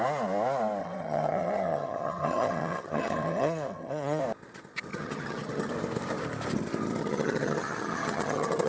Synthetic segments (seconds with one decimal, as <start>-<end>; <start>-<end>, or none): 0.8-4.2; 4.9-5.7; 7.0-8.7